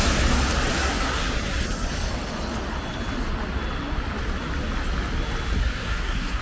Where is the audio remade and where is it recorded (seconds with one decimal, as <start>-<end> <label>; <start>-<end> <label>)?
0.0-0.7 recorded; 0.7-1.3 remade; 1.3-5.6 recorded; 5.6-6.4 remade